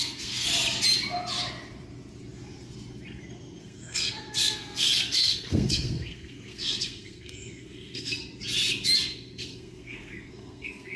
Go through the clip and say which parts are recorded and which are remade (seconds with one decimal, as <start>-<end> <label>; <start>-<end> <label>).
0.0-0.5 remade; 0.5-3.6 recorded; 3.6-8.2 remade; 8.2-9.0 recorded; 9.0-11.0 remade